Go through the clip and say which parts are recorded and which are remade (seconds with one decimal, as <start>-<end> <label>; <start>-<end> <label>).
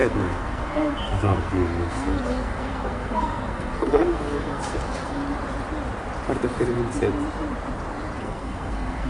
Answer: 0.0-5.2 remade; 5.2-8.2 recorded; 8.2-9.1 remade